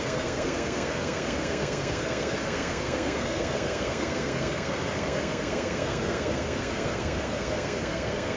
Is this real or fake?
fake